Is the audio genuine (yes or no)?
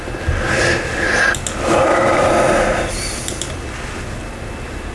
yes